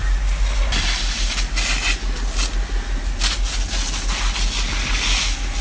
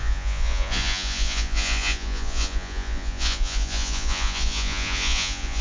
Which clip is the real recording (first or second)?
first